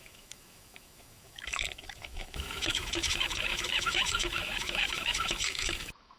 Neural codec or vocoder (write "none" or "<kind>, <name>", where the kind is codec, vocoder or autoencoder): autoencoder, DAC-VAE